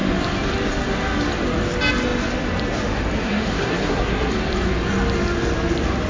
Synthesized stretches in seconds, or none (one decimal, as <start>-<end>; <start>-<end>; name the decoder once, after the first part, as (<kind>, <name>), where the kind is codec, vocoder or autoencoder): 3.2-4.3 (codec, SNAC)